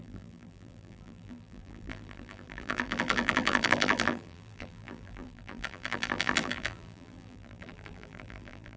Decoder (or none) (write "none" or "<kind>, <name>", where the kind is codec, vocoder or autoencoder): vocoder, BigVGAN v2